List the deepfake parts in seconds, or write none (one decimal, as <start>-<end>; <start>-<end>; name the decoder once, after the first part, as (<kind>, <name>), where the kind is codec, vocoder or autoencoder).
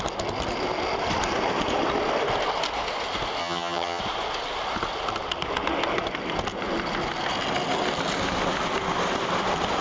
3.4-4.0 (vocoder, HiFi-GAN)